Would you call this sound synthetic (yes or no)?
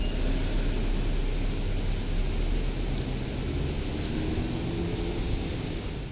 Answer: no